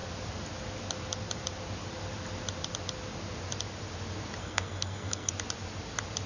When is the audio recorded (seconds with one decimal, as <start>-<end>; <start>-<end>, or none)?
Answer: 0.0-4.4; 5.3-6.3